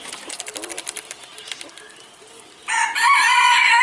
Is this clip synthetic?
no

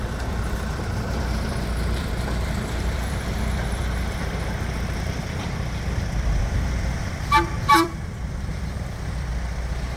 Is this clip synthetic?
yes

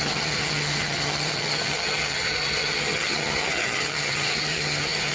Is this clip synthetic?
yes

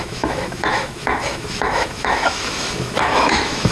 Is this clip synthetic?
yes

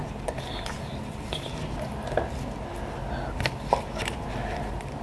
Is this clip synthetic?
no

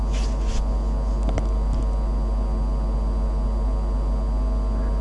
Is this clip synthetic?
no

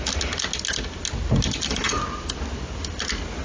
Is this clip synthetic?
no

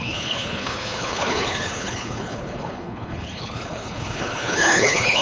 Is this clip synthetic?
yes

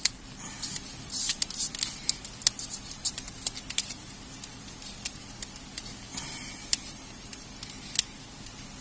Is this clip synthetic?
no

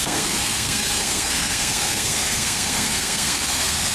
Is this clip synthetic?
yes